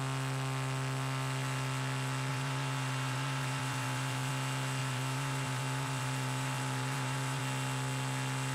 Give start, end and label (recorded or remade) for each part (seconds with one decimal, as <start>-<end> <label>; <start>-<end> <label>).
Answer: 0.0-2.3 recorded; 2.3-4.3 remade; 4.3-4.8 recorded; 4.8-7.4 remade; 7.4-8.5 recorded